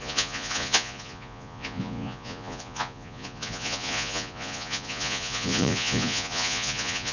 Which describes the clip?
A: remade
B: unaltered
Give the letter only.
A